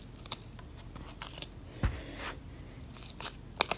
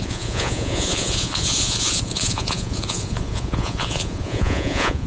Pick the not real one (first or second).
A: second